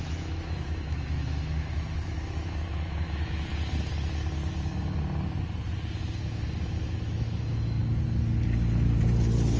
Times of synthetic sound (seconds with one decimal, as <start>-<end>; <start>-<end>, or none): 0.0-3.5; 6.6-7.8